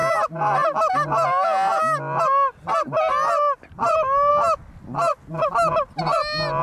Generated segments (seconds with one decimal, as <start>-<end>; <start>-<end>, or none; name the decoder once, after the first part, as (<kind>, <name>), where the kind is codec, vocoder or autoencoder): none